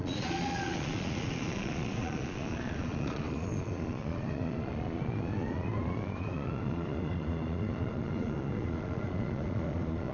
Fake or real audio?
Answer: fake